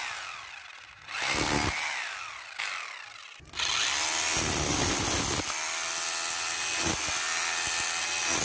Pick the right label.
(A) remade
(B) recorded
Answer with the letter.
B